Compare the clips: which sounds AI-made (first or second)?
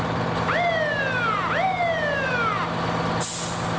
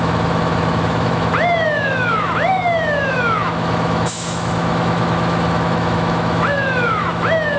second